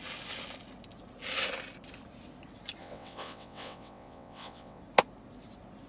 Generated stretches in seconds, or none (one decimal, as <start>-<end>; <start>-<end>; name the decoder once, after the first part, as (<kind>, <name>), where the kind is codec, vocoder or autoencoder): 2.8-4.8 (vocoder, WaveNeXt)